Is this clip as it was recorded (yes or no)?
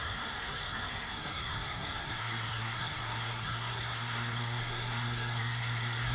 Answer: no